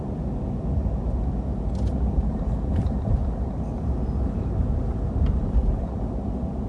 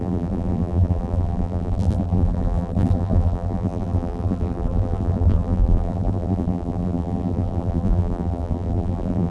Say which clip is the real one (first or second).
first